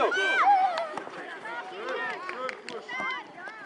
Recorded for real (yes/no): yes